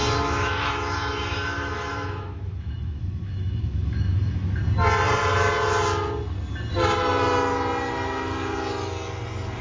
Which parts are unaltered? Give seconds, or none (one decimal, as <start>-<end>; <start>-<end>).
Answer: 4.5-9.6

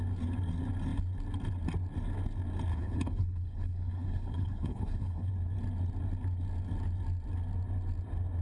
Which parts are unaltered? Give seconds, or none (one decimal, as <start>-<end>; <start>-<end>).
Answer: 0.0-2.7; 5.3-8.4

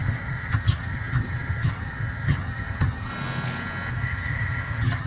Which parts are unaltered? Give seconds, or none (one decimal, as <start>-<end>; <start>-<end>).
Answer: 3.1-3.9

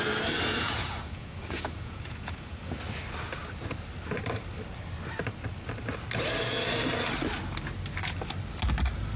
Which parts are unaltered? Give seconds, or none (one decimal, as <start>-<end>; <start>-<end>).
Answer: 0.0-0.5; 2.8-9.2

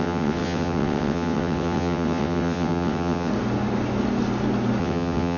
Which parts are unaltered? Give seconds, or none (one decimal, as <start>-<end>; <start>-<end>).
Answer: 3.3-4.8

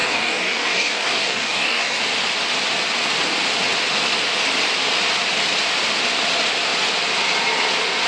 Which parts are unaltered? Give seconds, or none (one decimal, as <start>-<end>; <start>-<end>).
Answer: 2.0-8.1